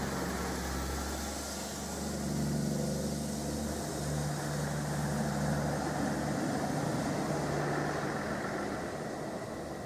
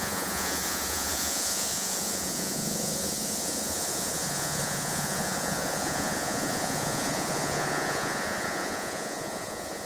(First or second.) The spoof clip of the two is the second